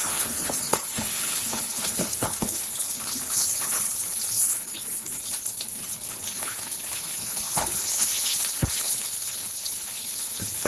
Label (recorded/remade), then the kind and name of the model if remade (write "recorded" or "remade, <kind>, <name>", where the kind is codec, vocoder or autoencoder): remade, codec, HILCodec